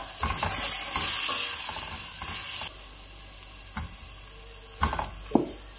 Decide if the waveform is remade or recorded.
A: recorded